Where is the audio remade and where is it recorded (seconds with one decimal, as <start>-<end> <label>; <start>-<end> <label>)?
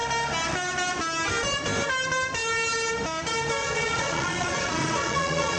0.0-3.6 recorded; 3.6-5.6 remade